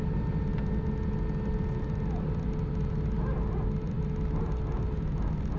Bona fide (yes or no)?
yes